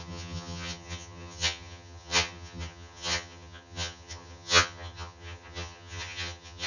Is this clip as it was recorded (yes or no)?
no